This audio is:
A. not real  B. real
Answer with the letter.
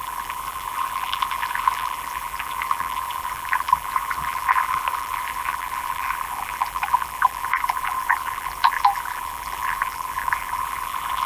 A